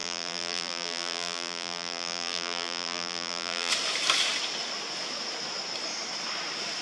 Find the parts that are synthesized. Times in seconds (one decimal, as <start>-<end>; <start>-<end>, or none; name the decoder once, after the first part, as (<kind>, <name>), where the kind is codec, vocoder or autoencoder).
0.0-3.7 (vocoder, BigVGAN v2)